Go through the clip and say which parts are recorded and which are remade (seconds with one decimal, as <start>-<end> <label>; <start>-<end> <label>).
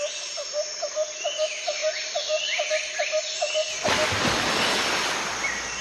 0.0-5.8 recorded